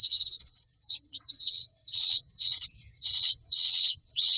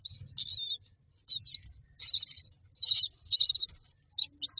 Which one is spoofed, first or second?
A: first